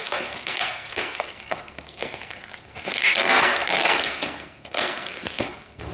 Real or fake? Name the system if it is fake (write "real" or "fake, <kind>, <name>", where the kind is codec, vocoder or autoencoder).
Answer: fake, codec, SNAC